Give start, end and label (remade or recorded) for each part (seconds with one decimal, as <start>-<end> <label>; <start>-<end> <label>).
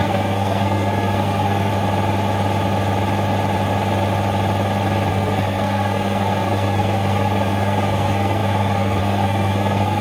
0.0-1.7 remade; 1.7-5.1 recorded; 5.1-10.0 remade